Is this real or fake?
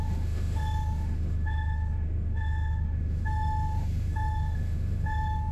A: fake